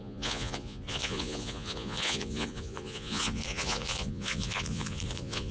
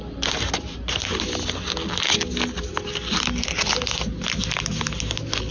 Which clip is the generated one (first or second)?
first